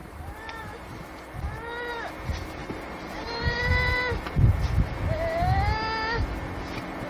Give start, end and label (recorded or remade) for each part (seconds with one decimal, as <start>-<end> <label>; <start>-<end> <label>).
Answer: 0.0-1.0 remade; 1.0-2.6 recorded; 2.6-3.7 remade; 3.7-7.1 recorded